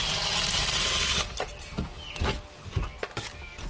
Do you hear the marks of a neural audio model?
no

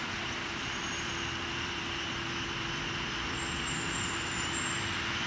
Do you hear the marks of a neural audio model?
yes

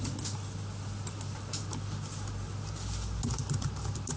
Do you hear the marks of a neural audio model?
no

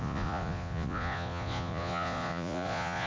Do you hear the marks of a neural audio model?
yes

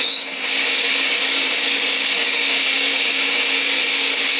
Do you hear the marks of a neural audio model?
yes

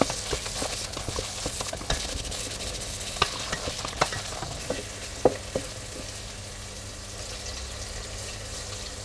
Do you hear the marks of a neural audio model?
no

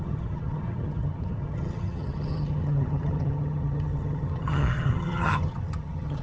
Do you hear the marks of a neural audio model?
yes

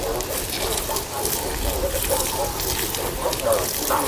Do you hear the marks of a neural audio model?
no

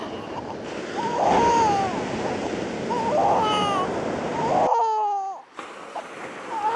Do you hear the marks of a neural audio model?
no